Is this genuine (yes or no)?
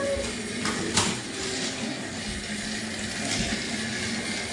yes